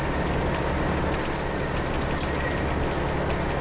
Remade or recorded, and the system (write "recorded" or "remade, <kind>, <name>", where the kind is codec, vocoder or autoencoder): recorded